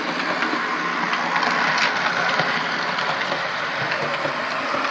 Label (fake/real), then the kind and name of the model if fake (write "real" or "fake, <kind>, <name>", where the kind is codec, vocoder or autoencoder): fake, vocoder, BigVGAN v2